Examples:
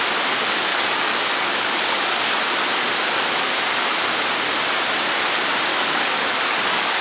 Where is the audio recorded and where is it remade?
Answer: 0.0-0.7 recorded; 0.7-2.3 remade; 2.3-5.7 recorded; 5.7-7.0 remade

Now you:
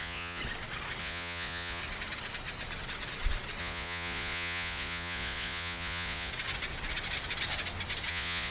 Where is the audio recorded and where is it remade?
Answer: 0.0-0.4 remade; 0.4-1.0 recorded; 1.0-1.8 remade; 1.8-3.6 recorded; 3.6-6.3 remade; 6.3-8.1 recorded; 8.1-8.5 remade